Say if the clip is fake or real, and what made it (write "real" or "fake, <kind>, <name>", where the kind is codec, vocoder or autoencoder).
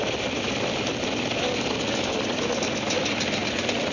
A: real